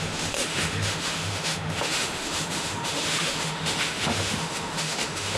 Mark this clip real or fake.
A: fake